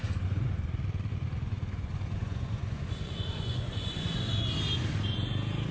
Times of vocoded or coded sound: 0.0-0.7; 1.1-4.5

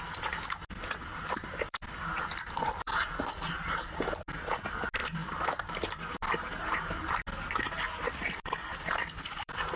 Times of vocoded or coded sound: 1.1-3.4; 8.7-9.8

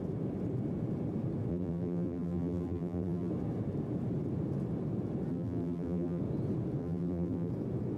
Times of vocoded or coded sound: 1.5-3.3; 5.3-6.2; 6.8-7.5

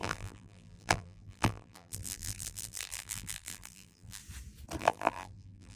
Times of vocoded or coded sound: 0.0-4.2; 4.8-5.8